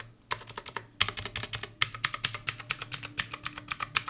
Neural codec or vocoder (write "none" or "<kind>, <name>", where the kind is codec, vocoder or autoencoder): none